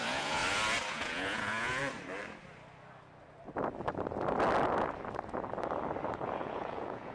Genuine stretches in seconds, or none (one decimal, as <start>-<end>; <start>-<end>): 0.4-0.9; 1.8-6.1